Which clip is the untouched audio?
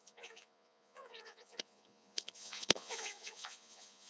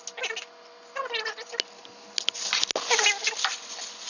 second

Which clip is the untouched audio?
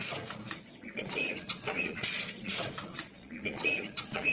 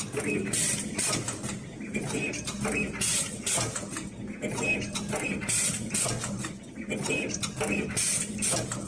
second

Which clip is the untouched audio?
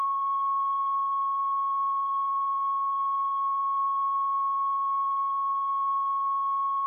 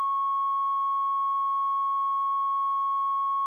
second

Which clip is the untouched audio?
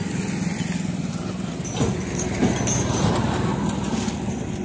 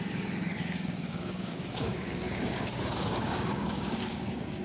first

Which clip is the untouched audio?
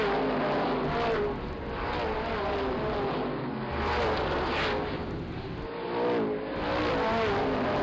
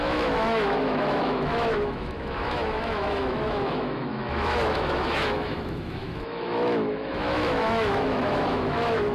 first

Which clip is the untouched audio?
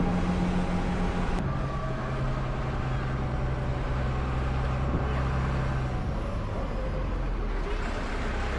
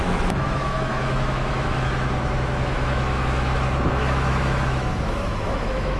first